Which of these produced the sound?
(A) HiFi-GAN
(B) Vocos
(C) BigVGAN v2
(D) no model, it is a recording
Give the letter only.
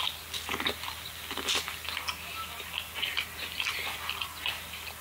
D